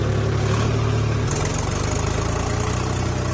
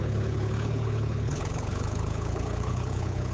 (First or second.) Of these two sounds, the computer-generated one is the second